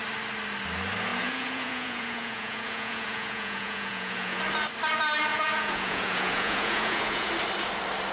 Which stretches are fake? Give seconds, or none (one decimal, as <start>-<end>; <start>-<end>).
1.1-4.4; 5.3-7.3